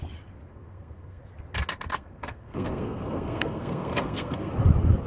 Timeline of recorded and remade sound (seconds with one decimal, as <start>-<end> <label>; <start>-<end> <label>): 0.0-0.5 recorded; 0.5-1.2 remade; 1.2-1.9 recorded; 1.9-4.5 remade; 4.5-5.1 recorded